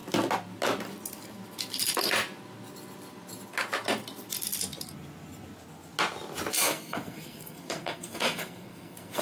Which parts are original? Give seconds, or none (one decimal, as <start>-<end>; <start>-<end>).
0.0-6.5